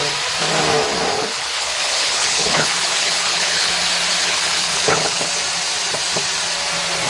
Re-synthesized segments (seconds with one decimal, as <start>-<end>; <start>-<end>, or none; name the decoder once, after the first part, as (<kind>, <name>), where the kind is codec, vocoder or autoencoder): 1.2-3.7 (codec, HILCodec); 4.2-5.3

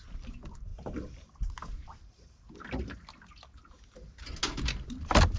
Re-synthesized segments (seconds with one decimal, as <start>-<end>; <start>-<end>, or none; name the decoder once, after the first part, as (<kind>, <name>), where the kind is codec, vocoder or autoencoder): none

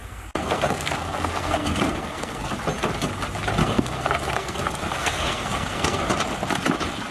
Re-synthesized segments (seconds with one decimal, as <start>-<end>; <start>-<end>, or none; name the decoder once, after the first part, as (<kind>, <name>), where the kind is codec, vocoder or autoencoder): 0.0-2.5 (codec, SNAC); 3.6-6.0

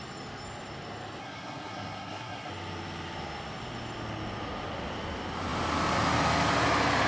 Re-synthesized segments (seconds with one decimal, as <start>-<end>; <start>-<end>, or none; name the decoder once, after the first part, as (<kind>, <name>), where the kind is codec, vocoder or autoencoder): 1.2-2.5 (codec, SNAC)

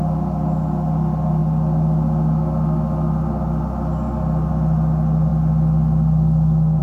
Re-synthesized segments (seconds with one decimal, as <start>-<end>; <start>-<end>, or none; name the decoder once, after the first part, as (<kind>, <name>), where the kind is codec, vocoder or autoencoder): none

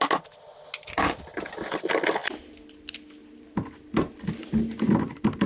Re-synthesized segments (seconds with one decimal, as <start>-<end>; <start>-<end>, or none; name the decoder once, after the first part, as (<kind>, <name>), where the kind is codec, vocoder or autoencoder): none

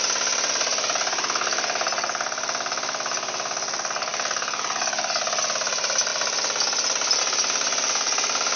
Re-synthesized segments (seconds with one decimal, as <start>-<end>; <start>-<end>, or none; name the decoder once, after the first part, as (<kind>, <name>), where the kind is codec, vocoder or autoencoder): none